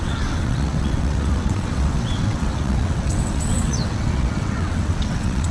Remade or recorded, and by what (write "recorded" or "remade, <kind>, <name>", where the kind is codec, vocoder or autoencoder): remade, vocoder, WaveNeXt